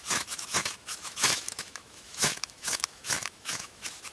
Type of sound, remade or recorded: remade